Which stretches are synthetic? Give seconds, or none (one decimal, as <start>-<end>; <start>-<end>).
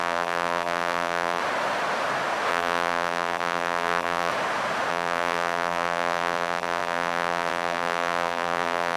0.0-1.4; 2.5-4.3; 4.9-9.0